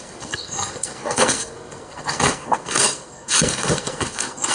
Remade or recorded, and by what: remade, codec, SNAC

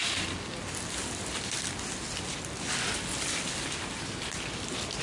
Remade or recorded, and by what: recorded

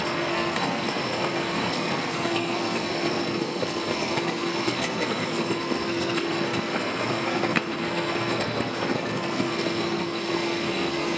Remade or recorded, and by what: remade, codec, SNAC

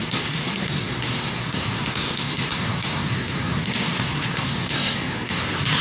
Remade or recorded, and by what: remade, codec, SNAC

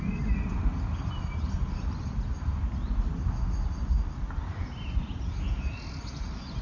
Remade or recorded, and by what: recorded